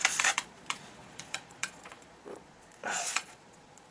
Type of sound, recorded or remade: remade